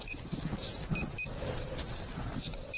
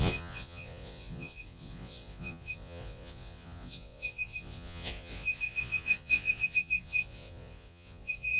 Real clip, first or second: first